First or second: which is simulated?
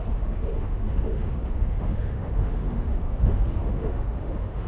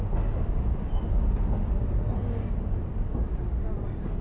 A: first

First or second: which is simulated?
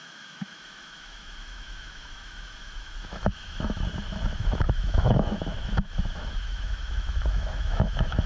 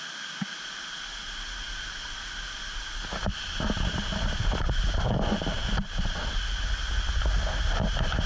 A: first